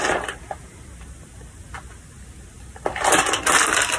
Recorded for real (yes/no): yes